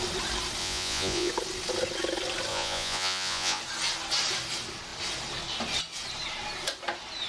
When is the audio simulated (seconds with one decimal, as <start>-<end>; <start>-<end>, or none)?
0.6-1.3; 2.5-3.6